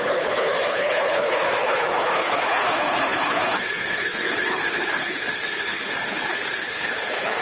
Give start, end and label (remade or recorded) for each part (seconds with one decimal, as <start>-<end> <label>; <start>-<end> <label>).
0.0-7.4 remade